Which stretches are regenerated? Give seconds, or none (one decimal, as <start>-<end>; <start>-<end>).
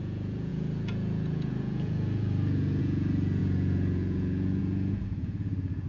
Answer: 0.0-5.9